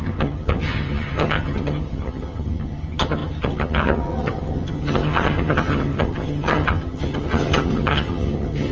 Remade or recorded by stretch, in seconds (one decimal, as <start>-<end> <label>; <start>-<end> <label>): 0.0-8.7 remade